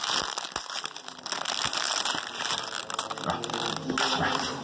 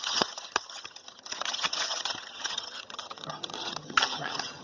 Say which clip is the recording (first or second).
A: first